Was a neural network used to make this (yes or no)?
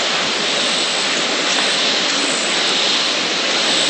no